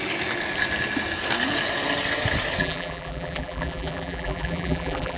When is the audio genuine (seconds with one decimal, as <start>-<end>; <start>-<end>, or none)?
0.0-2.6